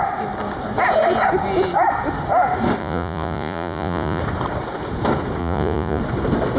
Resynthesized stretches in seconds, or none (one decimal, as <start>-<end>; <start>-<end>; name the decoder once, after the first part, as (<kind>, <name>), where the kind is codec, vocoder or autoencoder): 2.8-4.2 (vocoder, Vocos); 5.4-6.0